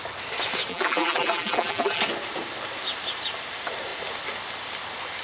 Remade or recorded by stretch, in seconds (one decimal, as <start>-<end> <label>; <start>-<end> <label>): 0.0-0.7 recorded; 0.7-2.0 remade; 2.0-5.2 recorded